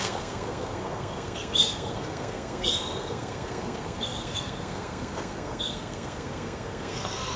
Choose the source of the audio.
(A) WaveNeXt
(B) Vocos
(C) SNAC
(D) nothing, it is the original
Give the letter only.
C